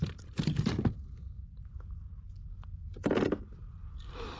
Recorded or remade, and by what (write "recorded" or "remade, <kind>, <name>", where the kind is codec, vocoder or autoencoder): recorded